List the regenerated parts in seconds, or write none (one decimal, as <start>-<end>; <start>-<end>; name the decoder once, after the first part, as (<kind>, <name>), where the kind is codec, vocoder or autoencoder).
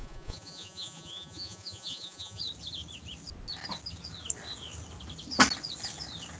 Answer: 0.0-2.4 (vocoder, Vocos)